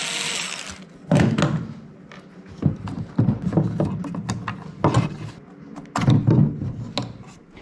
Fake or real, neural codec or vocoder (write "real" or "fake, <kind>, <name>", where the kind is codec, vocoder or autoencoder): real